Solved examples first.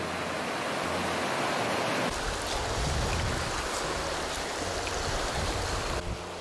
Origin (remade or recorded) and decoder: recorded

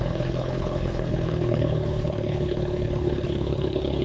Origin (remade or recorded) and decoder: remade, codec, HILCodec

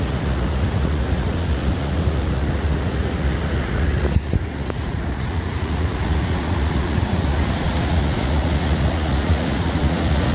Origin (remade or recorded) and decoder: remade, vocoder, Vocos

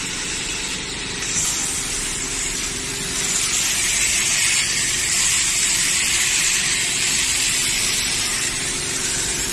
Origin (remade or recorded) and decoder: remade, vocoder, BigVGAN v2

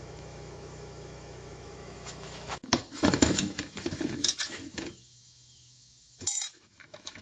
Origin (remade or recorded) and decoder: remade, autoencoder, DAC-VAE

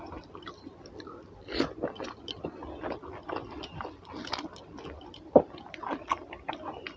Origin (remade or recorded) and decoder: recorded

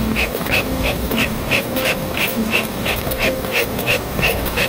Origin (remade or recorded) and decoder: remade, codec, DAC